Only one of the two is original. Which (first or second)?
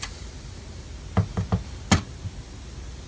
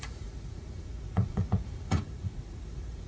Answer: first